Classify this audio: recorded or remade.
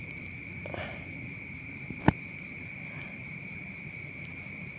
remade